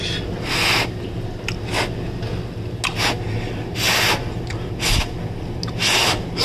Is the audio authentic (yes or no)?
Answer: yes